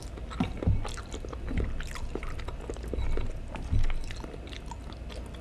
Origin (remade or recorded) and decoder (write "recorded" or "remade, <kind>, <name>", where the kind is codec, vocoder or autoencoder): recorded